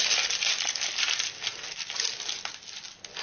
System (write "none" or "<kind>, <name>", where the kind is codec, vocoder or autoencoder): none